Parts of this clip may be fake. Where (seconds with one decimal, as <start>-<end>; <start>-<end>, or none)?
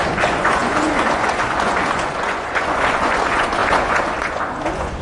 0.0-5.0